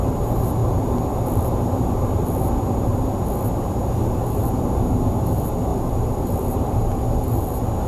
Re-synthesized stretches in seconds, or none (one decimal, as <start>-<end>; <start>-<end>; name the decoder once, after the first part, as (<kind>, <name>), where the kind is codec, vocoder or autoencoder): 5.7-7.0 (vocoder, BigVGAN v2)